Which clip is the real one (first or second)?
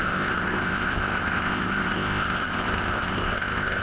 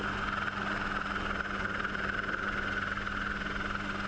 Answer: second